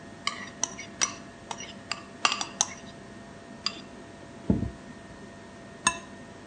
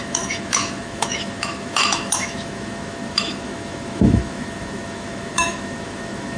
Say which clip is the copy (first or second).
second